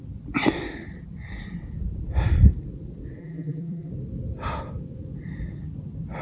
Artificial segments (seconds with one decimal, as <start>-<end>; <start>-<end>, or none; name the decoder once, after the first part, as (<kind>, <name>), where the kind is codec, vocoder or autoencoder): 3.2-3.9 (vocoder, BigVGAN v2)